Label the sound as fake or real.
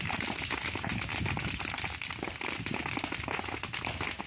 real